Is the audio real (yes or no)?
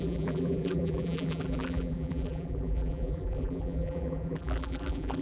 no